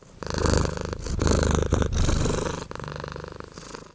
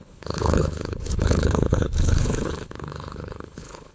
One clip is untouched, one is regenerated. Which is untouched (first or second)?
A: first